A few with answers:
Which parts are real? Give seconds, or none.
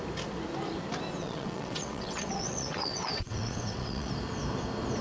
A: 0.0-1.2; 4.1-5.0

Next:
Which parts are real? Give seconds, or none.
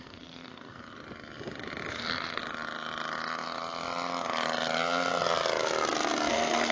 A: 0.8-1.9; 2.4-6.3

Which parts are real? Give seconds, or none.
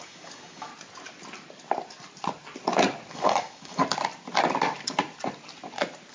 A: 0.7-3.1; 3.8-6.1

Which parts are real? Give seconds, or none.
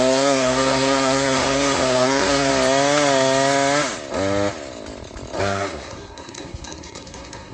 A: 2.5-5.4